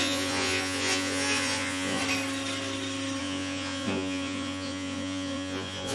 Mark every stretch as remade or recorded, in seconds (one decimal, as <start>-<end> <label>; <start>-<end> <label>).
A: 0.0-2.0 remade; 2.0-3.2 recorded; 3.2-5.9 remade